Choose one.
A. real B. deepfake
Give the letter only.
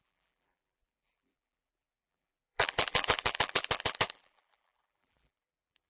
B